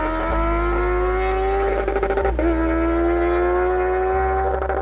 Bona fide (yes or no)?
yes